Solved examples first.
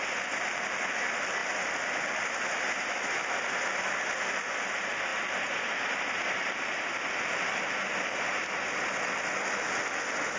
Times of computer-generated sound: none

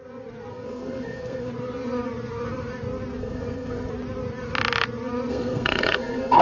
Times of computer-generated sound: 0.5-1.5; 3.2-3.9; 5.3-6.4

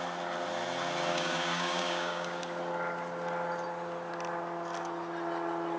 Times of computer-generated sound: 1.1-2.4